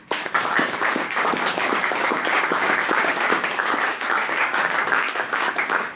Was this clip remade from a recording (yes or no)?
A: yes